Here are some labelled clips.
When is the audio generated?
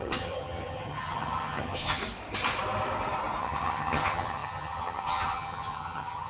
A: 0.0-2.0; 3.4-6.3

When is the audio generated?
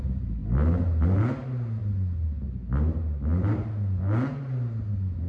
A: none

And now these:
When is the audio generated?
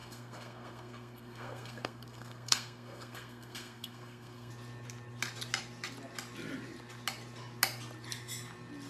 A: 0.0-4.5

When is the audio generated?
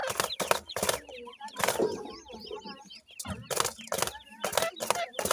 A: none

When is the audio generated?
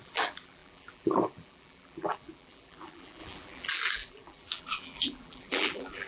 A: 0.0-6.1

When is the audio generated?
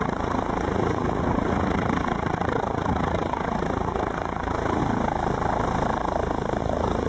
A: 0.0-4.8; 6.6-7.1